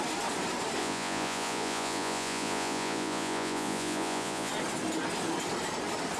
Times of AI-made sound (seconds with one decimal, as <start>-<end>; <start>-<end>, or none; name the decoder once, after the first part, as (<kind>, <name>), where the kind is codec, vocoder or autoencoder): 0.8-4.5 (vocoder, Vocos)